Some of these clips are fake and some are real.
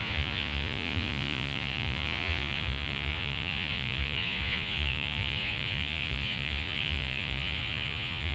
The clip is fake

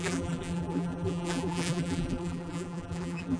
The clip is fake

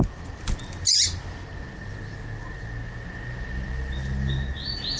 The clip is real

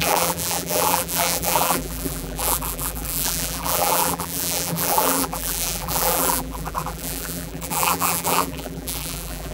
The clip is fake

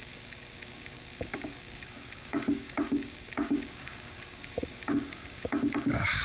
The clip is fake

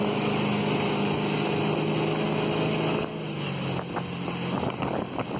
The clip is real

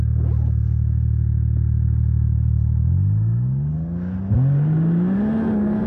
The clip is real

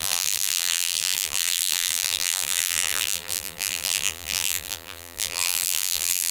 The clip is fake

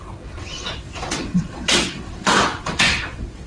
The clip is fake